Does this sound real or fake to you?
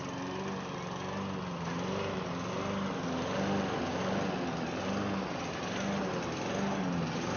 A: real